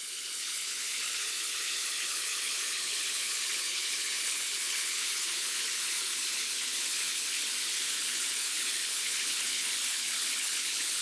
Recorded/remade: remade